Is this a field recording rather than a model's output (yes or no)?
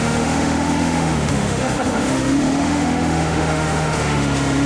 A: no